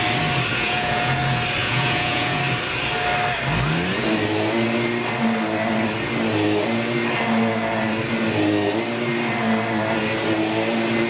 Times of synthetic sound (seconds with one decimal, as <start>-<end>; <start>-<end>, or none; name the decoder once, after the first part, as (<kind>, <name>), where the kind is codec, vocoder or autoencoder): 0.5-1.2 (vocoder, Vocos); 1.6-2.4